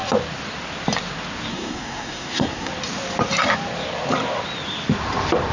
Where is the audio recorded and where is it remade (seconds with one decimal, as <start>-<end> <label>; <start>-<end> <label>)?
0.0-1.5 recorded; 1.5-2.7 remade; 2.7-5.5 recorded